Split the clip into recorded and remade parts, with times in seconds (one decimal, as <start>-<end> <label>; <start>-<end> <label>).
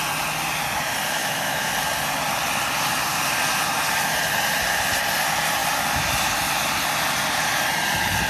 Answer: 0.0-1.2 recorded; 1.2-1.7 remade; 1.7-8.3 recorded